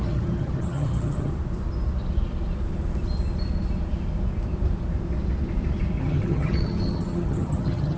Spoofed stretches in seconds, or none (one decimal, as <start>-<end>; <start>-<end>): 0.0-1.3; 6.0-8.0

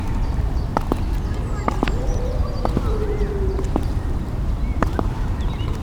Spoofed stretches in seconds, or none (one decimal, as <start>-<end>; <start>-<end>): 0.0-0.7; 1.5-2.4; 2.9-5.8

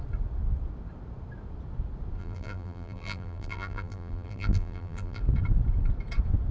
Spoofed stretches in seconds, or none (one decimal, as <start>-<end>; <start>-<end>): 2.2-5.2

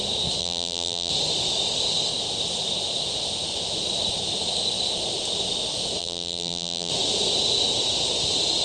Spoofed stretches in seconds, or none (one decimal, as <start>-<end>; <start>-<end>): 0.4-1.1; 6.0-6.9